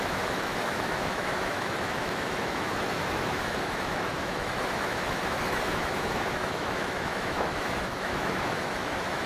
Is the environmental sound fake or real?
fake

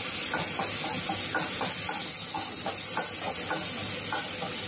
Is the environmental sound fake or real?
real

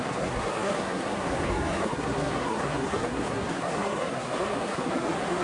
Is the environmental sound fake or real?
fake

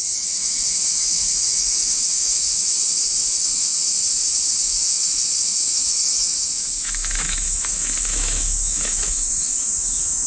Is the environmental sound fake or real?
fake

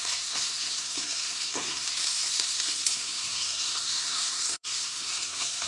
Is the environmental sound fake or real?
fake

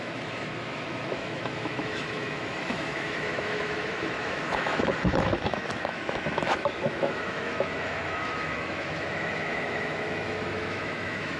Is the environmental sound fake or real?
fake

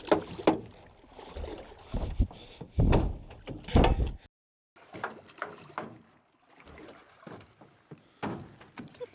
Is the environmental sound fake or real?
real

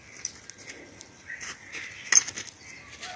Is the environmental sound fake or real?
real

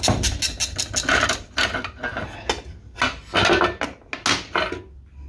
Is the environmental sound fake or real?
real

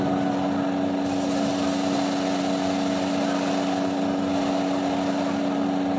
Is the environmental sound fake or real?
real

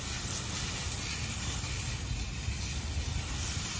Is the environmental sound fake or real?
real